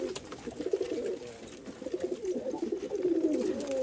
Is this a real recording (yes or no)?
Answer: yes